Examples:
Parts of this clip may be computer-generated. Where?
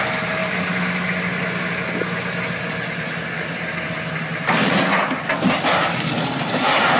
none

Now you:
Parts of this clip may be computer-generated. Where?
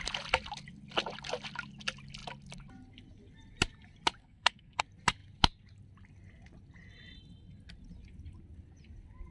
4.2-4.8 (codec, SNAC)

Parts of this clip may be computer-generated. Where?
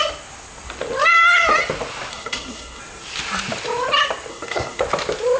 2.1-2.8 (codec, SNAC); 4.3-4.8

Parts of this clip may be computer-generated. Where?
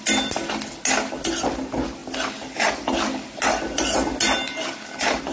none